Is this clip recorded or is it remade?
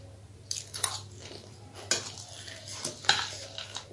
recorded